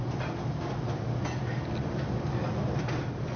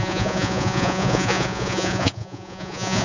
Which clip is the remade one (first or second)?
second